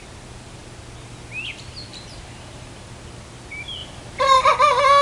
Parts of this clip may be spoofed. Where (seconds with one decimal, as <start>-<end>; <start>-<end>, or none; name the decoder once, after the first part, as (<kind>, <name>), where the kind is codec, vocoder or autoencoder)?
1.9-3.0 (vocoder, BigVGAN v2); 3.8-4.5